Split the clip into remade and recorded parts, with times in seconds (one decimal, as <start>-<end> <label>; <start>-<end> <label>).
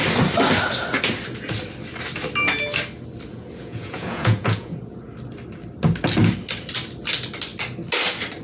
0.0-3.3 recorded; 3.3-5.0 remade; 5.0-8.4 recorded